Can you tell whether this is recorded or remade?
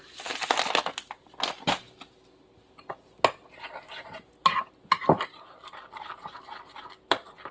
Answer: recorded